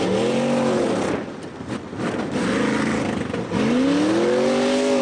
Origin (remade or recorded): recorded